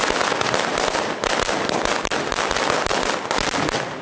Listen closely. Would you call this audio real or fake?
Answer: real